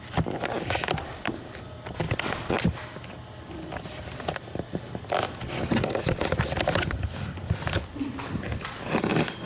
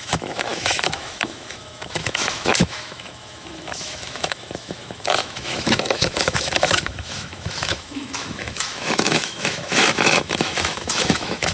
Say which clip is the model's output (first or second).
second